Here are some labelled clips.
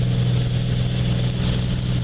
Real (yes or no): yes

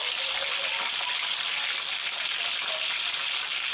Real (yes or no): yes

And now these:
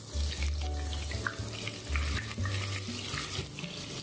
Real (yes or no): yes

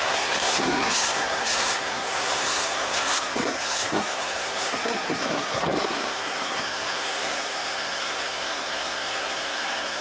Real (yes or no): no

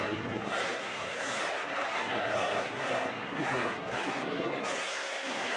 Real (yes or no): no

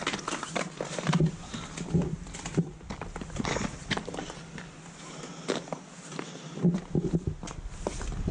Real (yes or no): yes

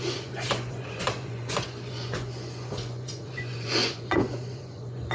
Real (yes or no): no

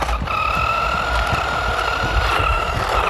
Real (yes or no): yes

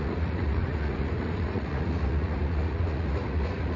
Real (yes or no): no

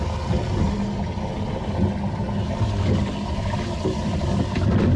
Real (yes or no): yes